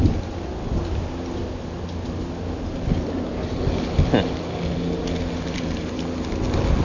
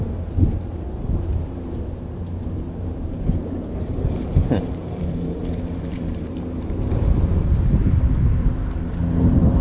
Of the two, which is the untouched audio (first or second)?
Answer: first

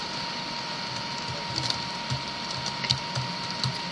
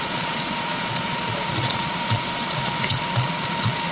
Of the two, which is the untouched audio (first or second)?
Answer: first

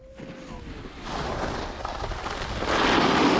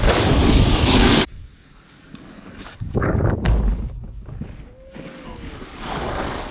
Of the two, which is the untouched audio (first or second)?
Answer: first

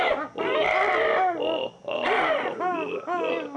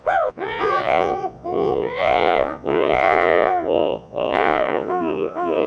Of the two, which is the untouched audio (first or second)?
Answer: first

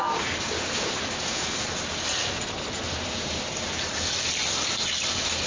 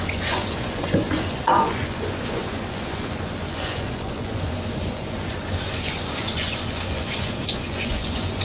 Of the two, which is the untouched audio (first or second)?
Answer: first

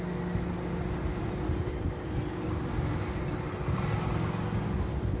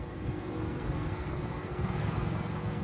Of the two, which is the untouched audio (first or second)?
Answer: first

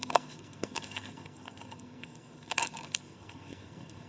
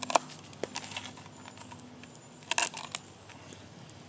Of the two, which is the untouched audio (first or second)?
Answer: second